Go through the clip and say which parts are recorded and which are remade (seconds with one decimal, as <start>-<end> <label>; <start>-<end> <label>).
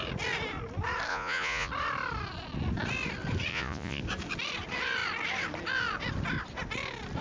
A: 0.0-1.1 recorded; 1.1-1.7 remade; 1.7-3.5 recorded; 3.5-4.0 remade; 4.0-7.2 recorded